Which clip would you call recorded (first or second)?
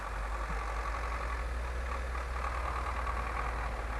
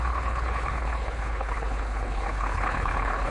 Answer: first